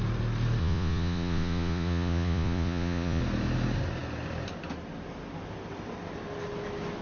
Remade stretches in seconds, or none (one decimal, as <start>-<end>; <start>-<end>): 0.6-3.2